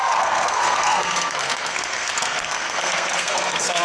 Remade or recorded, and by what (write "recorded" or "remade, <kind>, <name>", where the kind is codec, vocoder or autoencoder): remade, codec, SNAC